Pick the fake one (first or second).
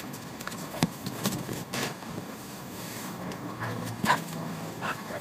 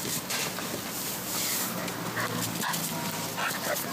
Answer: first